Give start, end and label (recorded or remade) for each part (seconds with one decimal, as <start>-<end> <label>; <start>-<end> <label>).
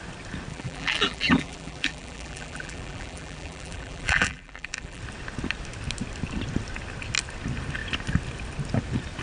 0.0-0.5 recorded; 0.5-5.0 remade; 5.0-9.2 recorded